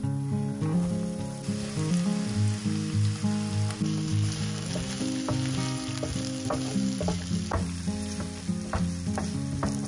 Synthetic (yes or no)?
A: no